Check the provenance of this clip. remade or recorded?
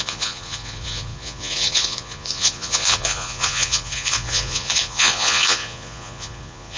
remade